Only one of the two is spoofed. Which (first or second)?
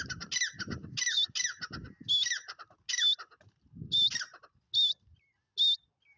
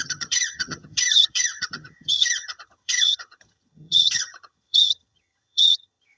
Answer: second